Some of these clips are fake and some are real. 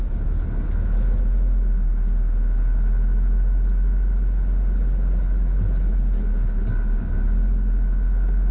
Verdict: real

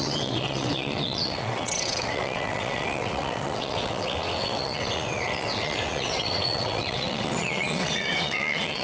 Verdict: fake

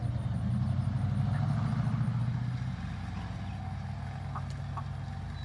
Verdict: real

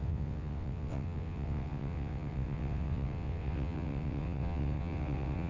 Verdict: fake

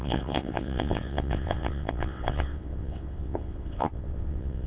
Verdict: fake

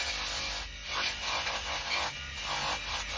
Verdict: real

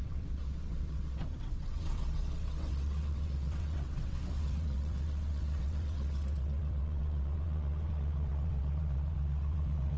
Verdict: fake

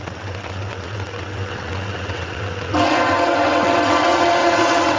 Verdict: fake